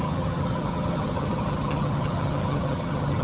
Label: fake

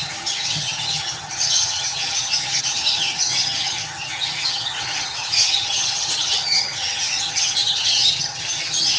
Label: fake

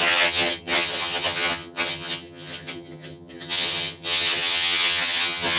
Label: fake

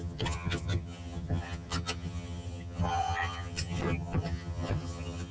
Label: fake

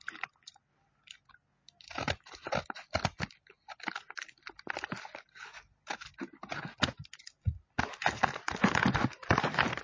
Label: real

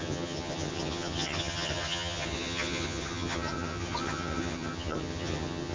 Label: fake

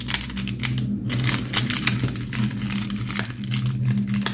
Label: real